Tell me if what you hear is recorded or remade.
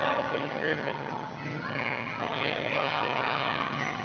remade